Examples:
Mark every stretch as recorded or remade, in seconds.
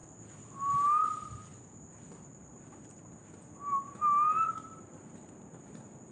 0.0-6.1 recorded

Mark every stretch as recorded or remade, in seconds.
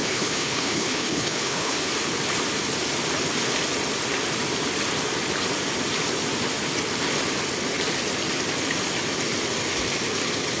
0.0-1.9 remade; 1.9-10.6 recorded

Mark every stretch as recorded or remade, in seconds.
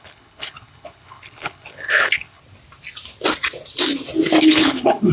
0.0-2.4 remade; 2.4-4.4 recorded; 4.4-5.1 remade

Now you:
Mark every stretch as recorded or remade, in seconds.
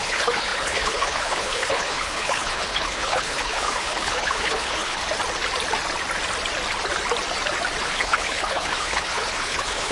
0.0-5.0 remade; 5.0-7.8 recorded; 7.8-9.9 remade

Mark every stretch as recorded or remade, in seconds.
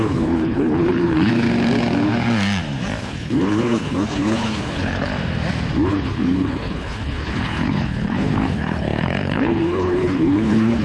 0.0-1.3 remade; 1.3-3.0 recorded; 3.0-5.1 remade; 5.1-5.9 recorded; 5.9-10.8 remade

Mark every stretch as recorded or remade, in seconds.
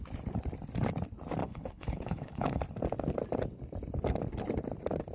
0.0-1.4 recorded; 1.4-2.6 remade; 2.6-5.1 recorded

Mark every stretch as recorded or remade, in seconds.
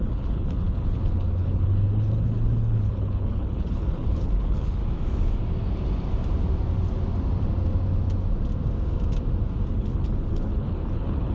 0.0-4.8 remade; 4.8-9.7 recorded; 9.7-11.3 remade